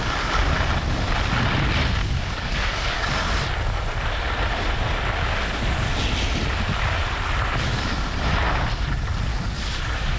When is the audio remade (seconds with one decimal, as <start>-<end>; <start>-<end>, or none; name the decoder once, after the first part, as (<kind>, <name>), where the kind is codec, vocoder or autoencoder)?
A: 2.0-3.3 (codec, DAC); 9.3-10.2